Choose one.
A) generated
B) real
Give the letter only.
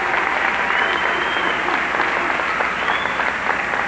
B